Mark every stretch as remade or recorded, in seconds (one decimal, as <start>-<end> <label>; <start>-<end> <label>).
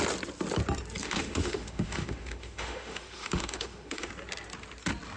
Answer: 0.0-1.0 recorded; 1.0-4.1 remade; 4.1-5.2 recorded